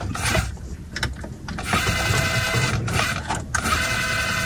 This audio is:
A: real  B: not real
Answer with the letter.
A